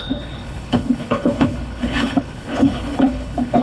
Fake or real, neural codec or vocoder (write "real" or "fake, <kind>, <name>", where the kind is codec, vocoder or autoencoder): fake, codec, HILCodec